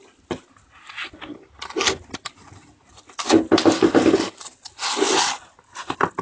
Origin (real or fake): real